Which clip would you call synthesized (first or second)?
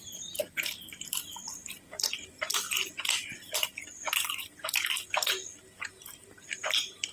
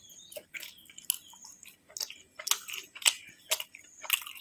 first